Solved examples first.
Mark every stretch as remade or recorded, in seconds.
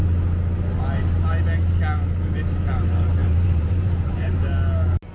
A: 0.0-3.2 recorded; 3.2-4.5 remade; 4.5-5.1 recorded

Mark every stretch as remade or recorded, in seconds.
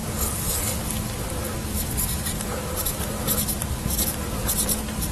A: 0.0-1.2 recorded; 1.2-4.4 remade; 4.4-5.1 recorded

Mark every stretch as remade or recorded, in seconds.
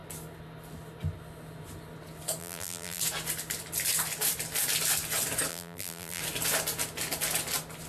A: 0.0-2.4 recorded; 2.4-3.0 remade; 3.0-5.5 recorded; 5.5-6.2 remade; 6.2-7.9 recorded